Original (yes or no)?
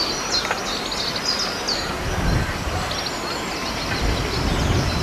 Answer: yes